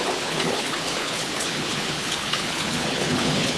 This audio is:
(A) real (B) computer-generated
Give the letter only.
B